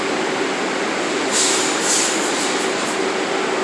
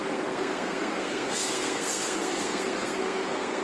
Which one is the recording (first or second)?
first